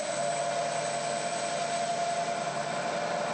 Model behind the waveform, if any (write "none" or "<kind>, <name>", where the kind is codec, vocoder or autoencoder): none